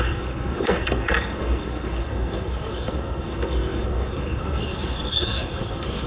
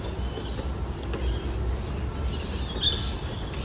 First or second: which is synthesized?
first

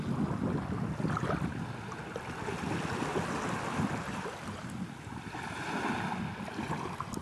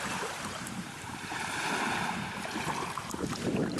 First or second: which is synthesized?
second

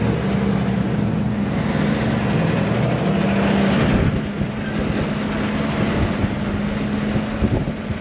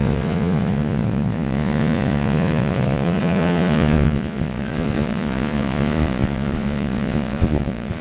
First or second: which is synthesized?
second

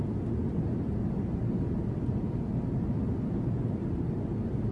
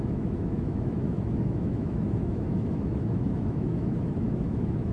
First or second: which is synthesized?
second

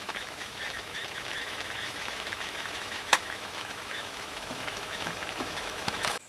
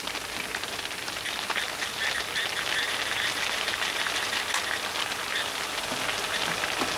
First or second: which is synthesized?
first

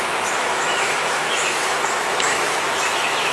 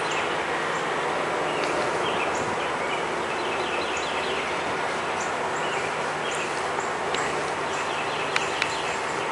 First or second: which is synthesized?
first